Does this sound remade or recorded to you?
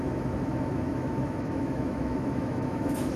remade